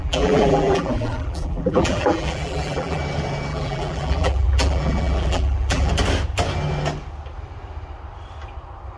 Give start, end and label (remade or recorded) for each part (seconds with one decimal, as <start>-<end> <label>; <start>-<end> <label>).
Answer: 0.0-3.0 remade; 3.0-3.5 recorded; 3.5-5.9 remade; 5.9-9.0 recorded